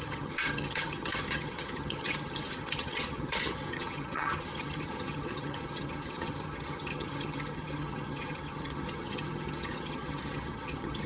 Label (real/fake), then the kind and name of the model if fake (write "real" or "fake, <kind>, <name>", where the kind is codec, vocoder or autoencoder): fake, vocoder, HiFi-GAN